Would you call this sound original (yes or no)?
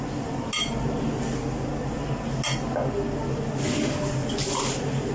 yes